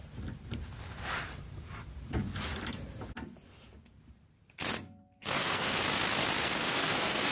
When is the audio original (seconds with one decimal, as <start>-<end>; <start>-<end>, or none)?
0.0-5.2; 5.8-6.4